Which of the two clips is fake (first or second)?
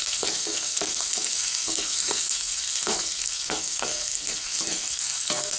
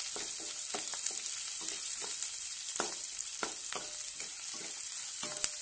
first